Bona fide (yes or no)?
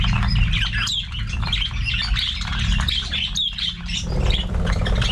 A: yes